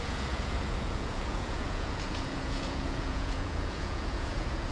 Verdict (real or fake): fake